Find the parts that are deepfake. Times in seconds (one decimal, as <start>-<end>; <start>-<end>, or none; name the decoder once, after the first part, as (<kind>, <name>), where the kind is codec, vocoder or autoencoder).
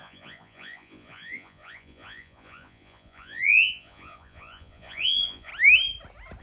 0.0-5.5 (vocoder, Vocos)